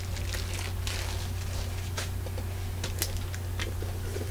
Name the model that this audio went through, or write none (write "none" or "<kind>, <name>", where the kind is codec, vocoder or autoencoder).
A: none